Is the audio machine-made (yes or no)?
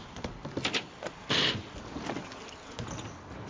no